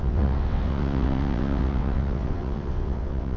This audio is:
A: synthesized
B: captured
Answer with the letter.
A